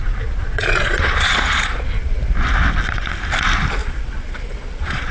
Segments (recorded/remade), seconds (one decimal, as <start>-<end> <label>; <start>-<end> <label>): 0.0-0.5 recorded; 0.5-1.8 remade; 1.8-3.8 recorded; 3.8-5.1 remade